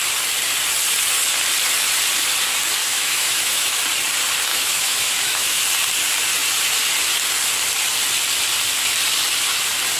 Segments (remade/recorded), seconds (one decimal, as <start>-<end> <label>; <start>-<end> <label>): 0.0-2.8 recorded; 2.8-3.8 remade; 3.8-4.5 recorded; 4.5-5.6 remade; 5.6-10.0 recorded